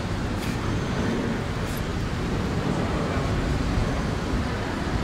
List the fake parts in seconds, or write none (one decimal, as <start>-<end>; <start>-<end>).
1.9-2.7